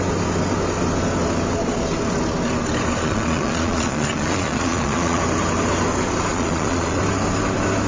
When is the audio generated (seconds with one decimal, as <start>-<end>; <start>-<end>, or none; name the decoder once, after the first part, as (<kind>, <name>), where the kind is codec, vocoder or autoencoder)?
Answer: 3.0-5.2 (vocoder, Vocos); 6.3-7.0